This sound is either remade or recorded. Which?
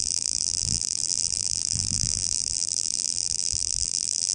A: remade